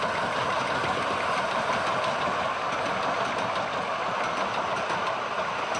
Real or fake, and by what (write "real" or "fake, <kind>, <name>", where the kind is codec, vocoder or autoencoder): real